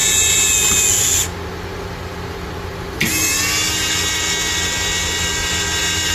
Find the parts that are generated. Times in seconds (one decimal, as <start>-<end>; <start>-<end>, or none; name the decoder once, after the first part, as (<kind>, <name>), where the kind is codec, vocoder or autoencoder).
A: none